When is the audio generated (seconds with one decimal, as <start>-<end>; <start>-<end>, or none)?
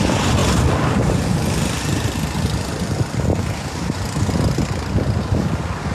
none